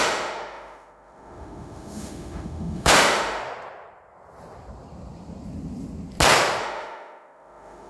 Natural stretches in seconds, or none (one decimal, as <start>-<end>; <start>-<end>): 3.4-6.6